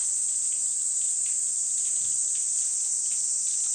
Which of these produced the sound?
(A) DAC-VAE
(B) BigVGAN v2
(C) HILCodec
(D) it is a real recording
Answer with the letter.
D